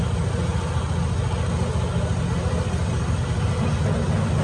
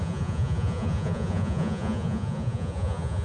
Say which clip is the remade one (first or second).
second